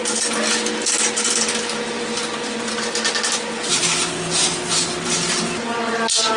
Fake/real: real